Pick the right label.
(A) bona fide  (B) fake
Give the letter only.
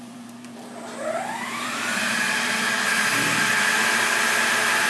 B